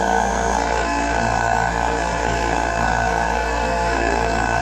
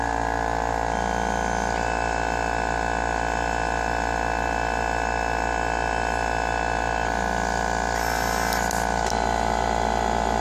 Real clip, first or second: second